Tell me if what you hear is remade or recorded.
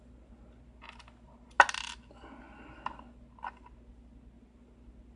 recorded